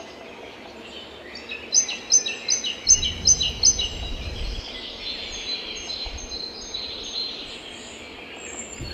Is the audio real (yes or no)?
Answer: yes